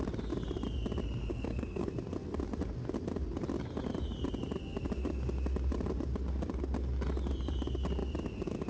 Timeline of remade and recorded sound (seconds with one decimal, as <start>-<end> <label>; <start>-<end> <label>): 0.0-1.3 recorded; 1.3-1.9 remade; 1.9-8.7 recorded